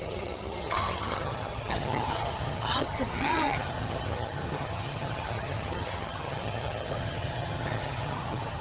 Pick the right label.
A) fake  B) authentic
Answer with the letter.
A